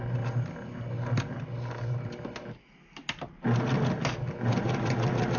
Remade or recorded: recorded